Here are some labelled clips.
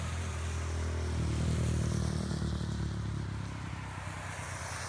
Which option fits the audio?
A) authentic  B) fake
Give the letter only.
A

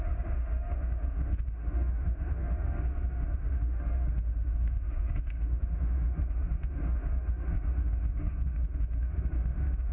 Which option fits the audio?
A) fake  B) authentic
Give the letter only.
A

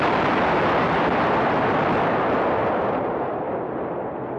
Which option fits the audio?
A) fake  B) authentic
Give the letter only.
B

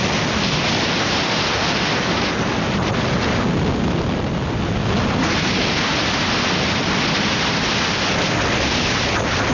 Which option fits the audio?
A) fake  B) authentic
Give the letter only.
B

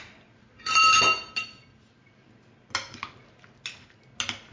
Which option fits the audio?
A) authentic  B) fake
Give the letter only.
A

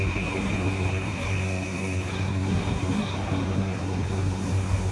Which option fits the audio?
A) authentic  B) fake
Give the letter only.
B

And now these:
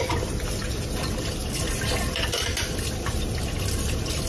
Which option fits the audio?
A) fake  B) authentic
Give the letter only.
B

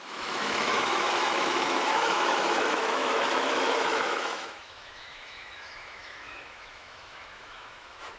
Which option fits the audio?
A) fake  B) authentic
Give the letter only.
A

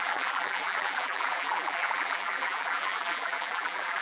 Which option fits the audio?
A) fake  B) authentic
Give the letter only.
A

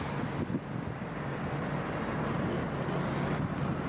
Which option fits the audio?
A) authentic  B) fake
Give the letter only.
A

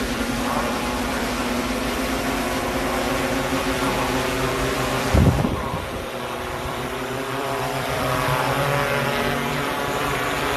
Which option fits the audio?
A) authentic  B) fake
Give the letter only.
B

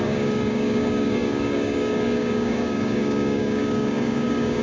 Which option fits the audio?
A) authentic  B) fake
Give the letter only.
B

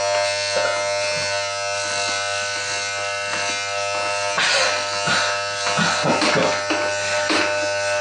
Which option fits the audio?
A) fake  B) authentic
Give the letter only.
B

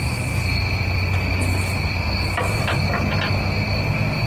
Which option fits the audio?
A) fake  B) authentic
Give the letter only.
B